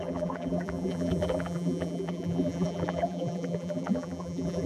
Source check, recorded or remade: remade